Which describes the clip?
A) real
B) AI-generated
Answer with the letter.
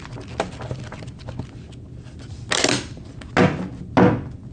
A